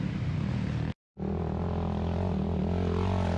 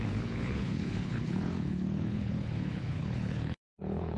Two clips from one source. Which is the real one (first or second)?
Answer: first